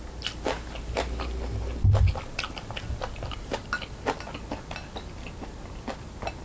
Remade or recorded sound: recorded